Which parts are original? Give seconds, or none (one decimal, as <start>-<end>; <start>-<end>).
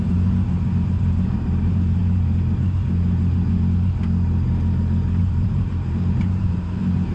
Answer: 2.0-5.2